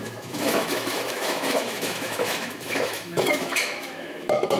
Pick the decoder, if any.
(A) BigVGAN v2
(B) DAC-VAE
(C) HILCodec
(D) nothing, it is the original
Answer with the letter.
B